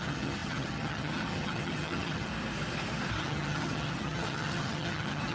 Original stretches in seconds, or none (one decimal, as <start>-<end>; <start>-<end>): 2.3-3.2